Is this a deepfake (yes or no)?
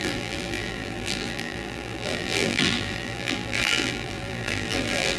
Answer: yes